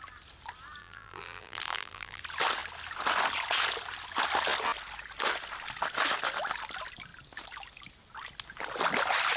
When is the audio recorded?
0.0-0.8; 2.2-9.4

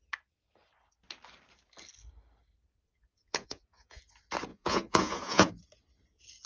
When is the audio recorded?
0.0-2.7; 4.0-4.5; 5.5-6.5

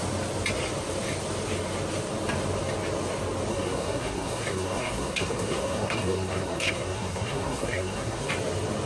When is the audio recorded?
0.0-3.5; 8.3-8.9

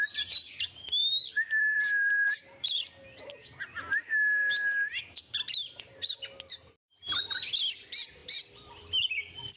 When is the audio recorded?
0.0-1.0; 3.3-8.2; 9.1-9.6

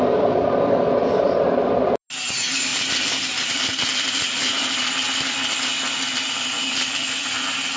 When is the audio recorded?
0.0-7.8

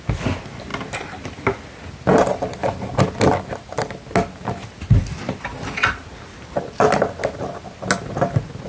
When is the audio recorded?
0.0-8.7